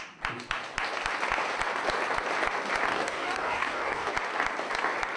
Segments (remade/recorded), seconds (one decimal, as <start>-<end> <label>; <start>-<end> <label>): 0.0-2.9 recorded; 2.9-4.1 remade; 4.1-5.2 recorded